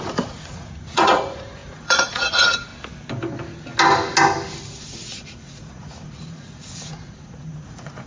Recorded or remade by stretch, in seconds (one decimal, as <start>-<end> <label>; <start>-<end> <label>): 0.0-2.7 remade; 2.7-4.8 recorded; 4.8-8.1 remade

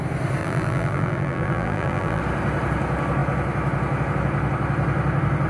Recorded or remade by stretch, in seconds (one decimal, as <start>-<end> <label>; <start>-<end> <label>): 0.0-0.4 recorded; 0.4-2.2 remade; 2.2-5.5 recorded

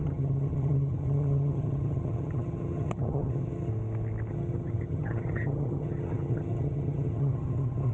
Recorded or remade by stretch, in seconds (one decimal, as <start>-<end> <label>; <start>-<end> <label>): 0.0-3.7 remade; 3.7-4.3 recorded; 4.3-7.9 remade

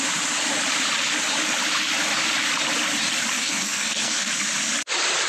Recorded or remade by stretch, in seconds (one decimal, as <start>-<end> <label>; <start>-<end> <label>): 0.0-3.4 recorded; 3.4-4.3 remade; 4.3-5.3 recorded

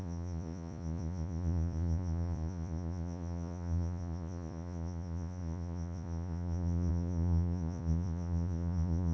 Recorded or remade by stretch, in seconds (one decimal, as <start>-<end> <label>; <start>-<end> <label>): 0.0-9.1 remade

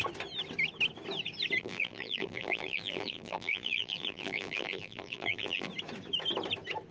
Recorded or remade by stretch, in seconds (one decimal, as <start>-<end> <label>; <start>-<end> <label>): 0.0-1.6 recorded; 1.6-5.7 remade; 5.7-6.9 recorded

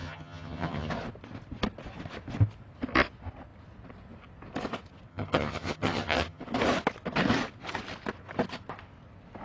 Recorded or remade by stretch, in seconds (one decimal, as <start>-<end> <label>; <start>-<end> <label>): 0.0-0.9 remade; 0.9-5.1 recorded; 5.1-6.4 remade; 6.4-9.4 recorded

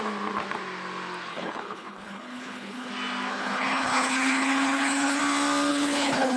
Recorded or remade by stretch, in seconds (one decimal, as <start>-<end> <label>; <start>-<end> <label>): 0.0-1.3 recorded; 1.3-2.9 remade; 2.9-3.3 recorded; 3.3-5.2 remade; 5.2-5.7 recorded; 5.7-6.4 remade